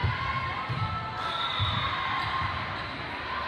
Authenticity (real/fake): real